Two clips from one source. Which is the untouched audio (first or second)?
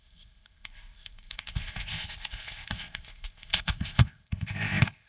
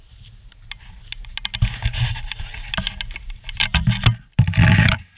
second